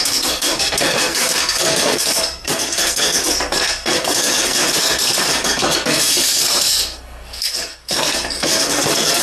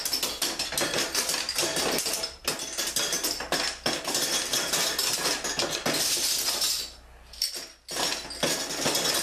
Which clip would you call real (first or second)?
second